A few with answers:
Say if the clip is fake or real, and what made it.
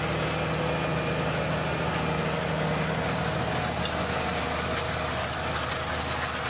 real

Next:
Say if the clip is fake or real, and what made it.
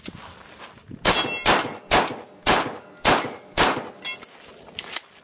real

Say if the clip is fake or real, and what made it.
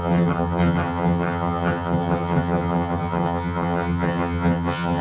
fake, vocoder, HiFi-GAN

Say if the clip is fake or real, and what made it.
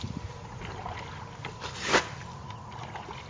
real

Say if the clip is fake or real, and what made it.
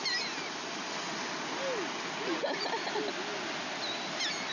real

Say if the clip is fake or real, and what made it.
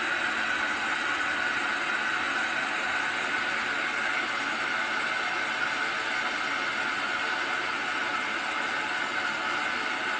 real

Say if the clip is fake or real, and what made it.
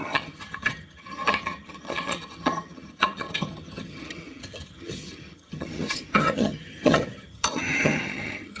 fake, vocoder, HiFi-GAN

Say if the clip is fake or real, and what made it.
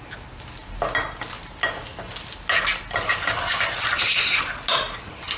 real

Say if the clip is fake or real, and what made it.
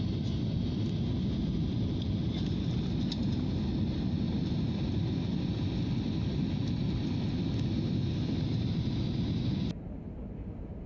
real